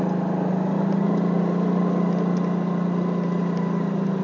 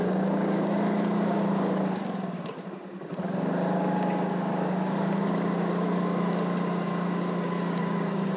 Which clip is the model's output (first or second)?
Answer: second